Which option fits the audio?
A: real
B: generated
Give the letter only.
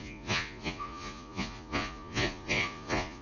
B